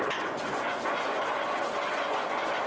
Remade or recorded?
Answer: remade